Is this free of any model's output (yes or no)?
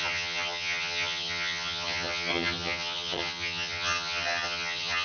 no